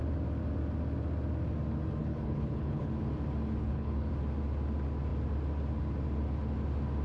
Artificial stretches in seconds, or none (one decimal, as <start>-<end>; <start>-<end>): 2.0-2.9; 3.6-4.1